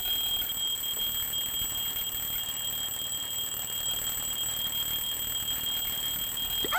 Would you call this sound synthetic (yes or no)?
no